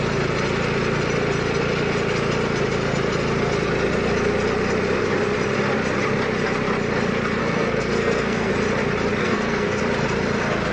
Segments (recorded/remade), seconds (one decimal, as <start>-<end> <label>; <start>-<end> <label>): 0.0-7.4 recorded; 7.4-8.5 remade; 8.5-9.2 recorded; 9.2-9.8 remade; 9.8-10.7 recorded